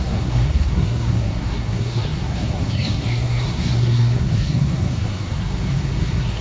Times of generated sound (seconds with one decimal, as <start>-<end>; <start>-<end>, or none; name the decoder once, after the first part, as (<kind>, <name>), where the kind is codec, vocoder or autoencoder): 0.0-6.4 (codec, SNAC)